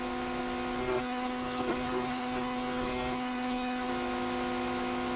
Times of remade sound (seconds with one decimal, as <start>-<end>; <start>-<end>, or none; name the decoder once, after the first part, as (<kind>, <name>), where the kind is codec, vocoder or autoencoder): 0.8-3.9 (codec, SNAC)